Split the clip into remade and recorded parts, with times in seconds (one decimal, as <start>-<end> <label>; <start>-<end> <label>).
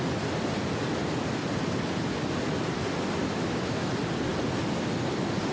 0.0-3.2 recorded; 3.2-3.9 remade; 3.9-5.5 recorded